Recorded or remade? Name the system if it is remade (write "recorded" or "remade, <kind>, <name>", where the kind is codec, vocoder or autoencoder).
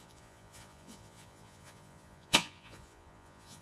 remade, vocoder, Vocos